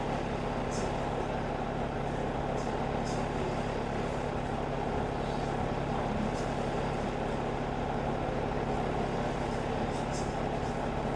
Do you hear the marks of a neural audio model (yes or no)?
no